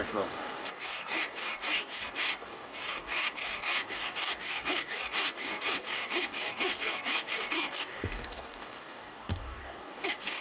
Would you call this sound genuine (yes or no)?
no